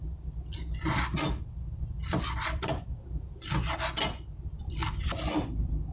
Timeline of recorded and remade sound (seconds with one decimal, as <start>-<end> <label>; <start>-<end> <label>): 0.0-2.0 recorded; 2.0-2.8 remade; 2.8-5.9 recorded